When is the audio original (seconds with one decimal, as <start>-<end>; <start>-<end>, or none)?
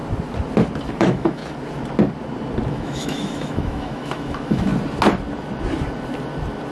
0.0-1.0; 1.4-2.7; 4.7-6.7